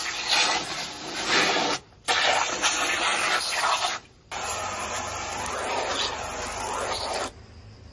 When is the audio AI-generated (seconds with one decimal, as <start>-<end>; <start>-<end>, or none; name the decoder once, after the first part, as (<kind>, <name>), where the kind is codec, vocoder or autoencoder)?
none